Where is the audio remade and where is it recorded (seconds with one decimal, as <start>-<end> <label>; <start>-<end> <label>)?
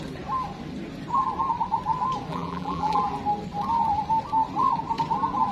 0.0-2.3 recorded; 2.3-3.0 remade; 3.0-5.5 recorded